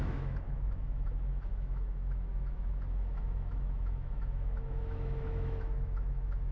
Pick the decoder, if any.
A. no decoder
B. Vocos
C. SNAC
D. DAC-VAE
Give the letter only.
D